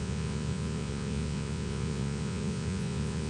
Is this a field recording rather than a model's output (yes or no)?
no